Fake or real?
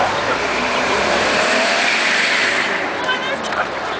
fake